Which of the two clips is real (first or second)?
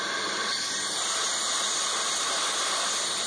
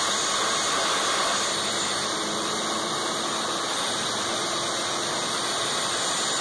second